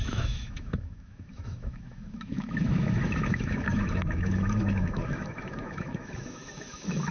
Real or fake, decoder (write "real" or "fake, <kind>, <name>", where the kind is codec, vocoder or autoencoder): fake, autoencoder, DAC-VAE